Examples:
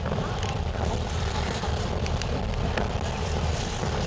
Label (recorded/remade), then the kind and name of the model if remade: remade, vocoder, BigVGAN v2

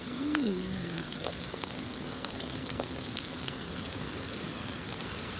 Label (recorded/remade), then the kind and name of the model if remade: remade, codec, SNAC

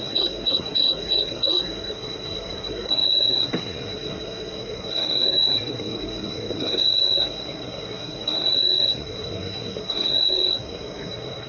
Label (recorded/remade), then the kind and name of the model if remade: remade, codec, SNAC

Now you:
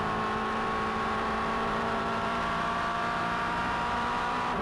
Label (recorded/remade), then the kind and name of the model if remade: remade, vocoder, BigVGAN v2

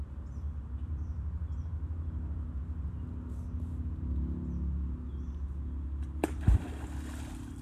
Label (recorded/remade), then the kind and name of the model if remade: recorded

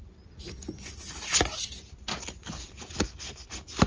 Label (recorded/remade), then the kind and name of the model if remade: recorded